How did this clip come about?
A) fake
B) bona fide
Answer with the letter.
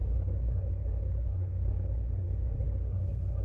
A